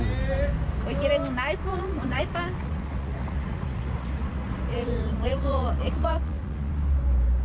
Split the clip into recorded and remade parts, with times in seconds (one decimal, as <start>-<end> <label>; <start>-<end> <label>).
0.0-1.7 recorded; 1.7-2.2 remade; 2.2-2.6 recorded; 2.6-6.7 remade; 6.7-7.4 recorded